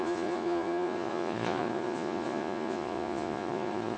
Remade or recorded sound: remade